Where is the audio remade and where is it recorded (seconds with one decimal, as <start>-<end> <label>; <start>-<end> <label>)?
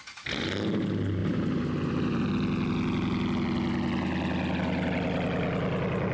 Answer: 0.0-1.2 recorded; 1.2-2.3 remade; 2.3-6.1 recorded